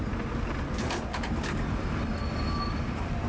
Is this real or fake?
real